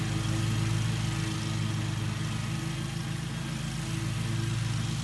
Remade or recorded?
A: recorded